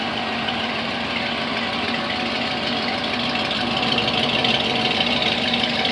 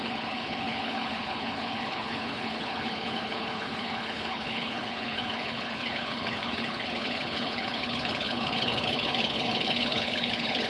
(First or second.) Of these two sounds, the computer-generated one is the second